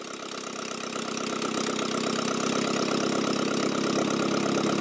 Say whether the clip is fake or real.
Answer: real